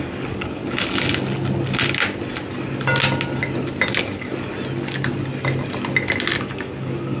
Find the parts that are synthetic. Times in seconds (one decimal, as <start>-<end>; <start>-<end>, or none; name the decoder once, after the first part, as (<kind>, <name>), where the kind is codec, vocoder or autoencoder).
0.0-0.6 (codec, DAC); 4.0-4.5; 6.4-7.2

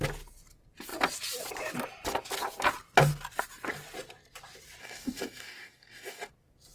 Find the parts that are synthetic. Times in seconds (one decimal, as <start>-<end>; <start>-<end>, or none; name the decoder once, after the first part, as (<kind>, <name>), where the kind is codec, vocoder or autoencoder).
4.8-6.3 (codec, DAC)